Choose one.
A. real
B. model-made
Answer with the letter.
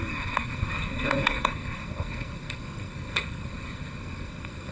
B